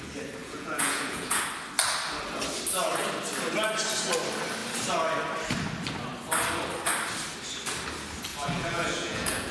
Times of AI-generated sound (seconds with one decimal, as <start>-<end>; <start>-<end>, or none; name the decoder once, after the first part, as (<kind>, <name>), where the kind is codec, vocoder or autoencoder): 0.4-1.4 (vocoder, Vocos); 8.3-9.5